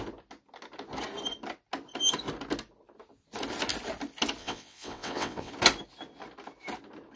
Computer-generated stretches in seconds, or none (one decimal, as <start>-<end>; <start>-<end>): 4.4-5.5